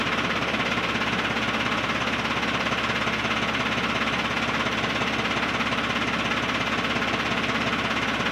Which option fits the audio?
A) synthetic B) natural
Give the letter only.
B